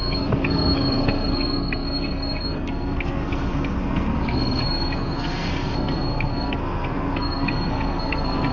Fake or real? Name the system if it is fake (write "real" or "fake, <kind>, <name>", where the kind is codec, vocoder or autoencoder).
fake, codec, SNAC